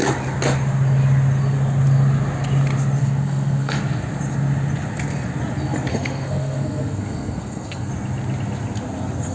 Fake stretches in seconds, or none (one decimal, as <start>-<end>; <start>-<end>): 3.0-3.8; 5.9-7.9